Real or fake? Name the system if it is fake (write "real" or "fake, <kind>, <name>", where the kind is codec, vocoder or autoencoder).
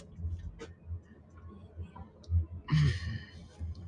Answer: real